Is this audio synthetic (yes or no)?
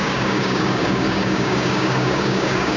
yes